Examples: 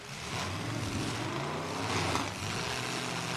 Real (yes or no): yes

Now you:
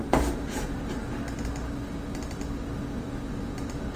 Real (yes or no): yes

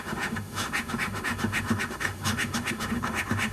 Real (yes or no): no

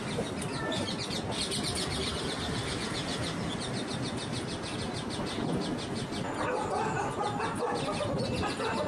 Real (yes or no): yes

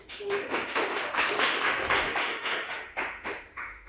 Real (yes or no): no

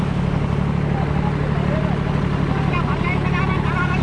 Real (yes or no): yes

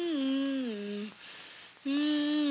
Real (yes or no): yes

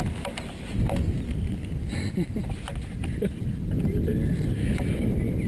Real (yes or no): yes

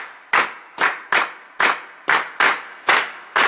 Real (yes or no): yes